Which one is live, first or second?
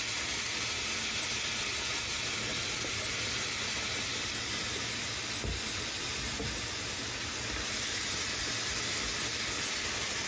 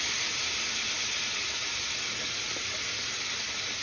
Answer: first